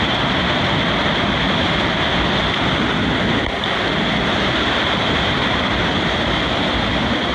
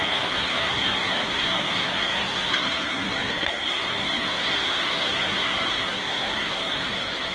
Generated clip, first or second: second